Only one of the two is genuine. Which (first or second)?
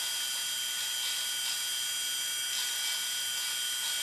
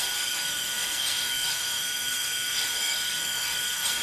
first